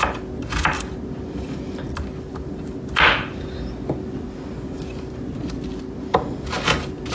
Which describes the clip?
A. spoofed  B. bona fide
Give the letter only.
B